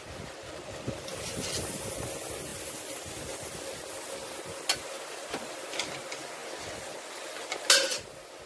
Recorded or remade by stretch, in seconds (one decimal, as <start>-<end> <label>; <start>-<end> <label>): 0.0-8.5 recorded